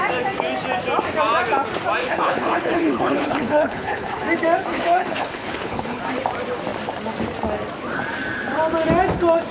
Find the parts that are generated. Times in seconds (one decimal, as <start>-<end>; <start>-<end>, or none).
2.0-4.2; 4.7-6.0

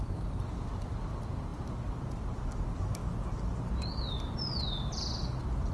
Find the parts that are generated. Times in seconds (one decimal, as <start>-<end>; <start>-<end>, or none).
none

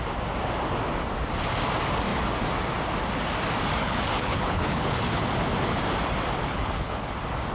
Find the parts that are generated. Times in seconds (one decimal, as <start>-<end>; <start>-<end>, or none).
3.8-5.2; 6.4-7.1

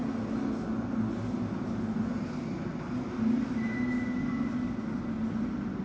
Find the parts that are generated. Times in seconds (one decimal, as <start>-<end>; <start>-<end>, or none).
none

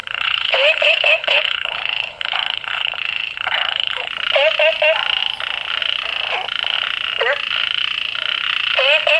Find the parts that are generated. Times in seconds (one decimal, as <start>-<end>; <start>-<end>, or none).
0.0-4.1

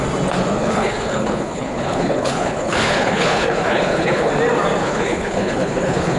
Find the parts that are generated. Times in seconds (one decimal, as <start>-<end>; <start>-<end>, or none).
0.6-4.3; 4.8-6.2

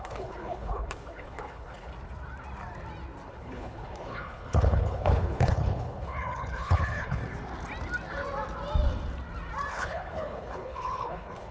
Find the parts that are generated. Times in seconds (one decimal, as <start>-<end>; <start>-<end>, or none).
0.0-1.9; 3.3-7.2; 9.7-11.5

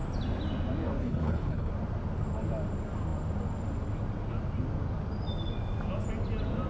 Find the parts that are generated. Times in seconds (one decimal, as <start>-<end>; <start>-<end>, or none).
1.0-1.7